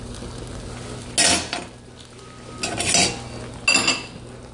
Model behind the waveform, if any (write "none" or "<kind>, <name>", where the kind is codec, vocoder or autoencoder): none